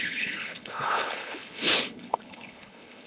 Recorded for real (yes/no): no